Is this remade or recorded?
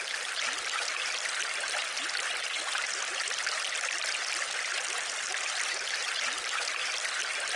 recorded